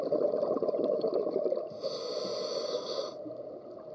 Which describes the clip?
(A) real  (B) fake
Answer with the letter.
A